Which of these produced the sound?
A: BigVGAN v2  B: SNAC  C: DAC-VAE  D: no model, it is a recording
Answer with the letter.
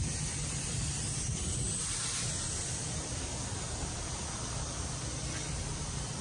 A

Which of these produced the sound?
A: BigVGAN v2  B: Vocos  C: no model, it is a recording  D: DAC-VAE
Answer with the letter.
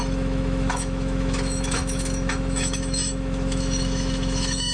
D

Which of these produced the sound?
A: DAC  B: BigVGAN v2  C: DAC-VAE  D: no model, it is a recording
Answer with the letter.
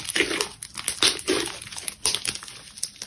D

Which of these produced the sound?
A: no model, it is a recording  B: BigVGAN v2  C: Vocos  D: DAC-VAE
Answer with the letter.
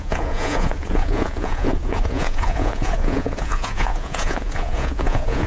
C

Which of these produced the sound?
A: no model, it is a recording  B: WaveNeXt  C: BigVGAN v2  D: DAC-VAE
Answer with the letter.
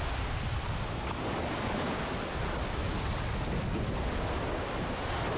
A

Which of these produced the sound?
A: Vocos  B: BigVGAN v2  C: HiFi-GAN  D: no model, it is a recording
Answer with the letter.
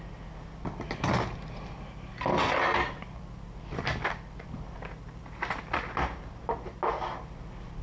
D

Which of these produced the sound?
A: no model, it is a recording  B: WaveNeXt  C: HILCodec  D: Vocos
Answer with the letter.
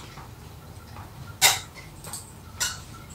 A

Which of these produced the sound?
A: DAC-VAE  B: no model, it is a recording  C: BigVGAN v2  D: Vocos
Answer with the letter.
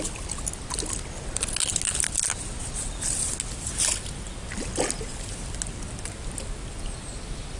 B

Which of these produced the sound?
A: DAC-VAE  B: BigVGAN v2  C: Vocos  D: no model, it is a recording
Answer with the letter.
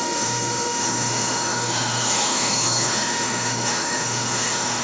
A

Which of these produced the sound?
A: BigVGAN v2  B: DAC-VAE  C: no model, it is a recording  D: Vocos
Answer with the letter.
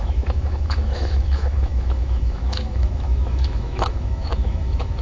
B